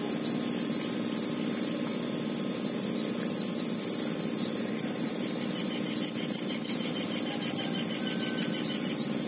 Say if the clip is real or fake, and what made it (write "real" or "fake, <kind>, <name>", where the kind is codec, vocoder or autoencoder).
real